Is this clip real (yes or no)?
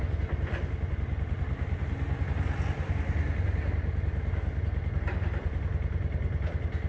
yes